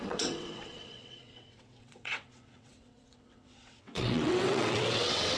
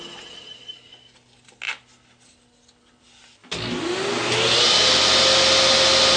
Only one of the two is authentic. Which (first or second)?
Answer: second